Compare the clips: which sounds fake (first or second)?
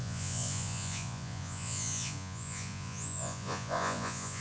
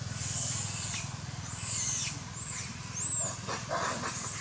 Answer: first